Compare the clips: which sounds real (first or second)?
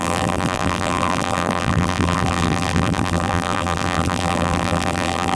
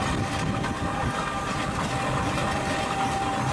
second